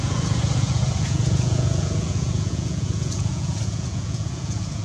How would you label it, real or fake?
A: fake